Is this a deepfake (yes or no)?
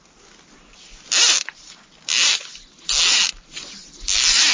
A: no